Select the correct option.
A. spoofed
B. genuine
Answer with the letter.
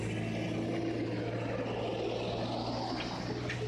B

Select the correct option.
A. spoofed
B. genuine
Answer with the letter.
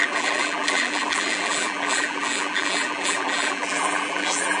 A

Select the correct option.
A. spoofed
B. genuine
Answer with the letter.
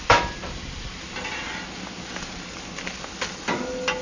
B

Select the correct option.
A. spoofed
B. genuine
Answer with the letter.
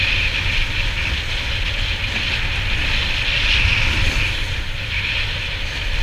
B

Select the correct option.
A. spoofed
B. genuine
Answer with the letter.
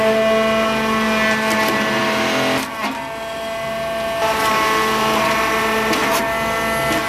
B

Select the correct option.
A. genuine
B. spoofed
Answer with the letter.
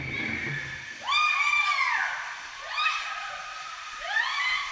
A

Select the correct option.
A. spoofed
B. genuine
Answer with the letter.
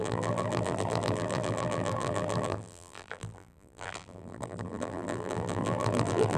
A